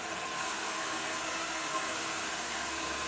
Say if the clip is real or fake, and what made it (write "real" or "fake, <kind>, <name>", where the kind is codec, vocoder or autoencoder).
fake, codec, SNAC